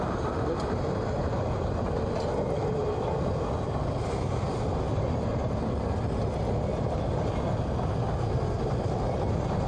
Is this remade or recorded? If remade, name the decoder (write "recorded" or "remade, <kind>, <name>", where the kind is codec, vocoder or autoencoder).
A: recorded